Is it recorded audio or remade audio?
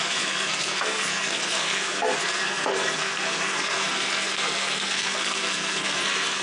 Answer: remade